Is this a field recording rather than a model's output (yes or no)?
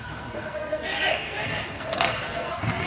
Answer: no